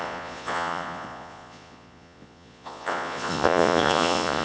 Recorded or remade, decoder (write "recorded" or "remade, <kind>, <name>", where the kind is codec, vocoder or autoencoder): remade, vocoder, Vocos